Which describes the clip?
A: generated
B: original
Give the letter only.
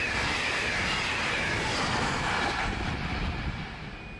B